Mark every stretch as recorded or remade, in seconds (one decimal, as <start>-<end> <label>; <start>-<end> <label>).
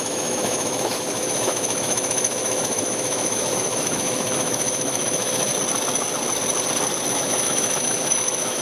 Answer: 0.0-5.5 remade; 5.5-7.1 recorded; 7.1-8.6 remade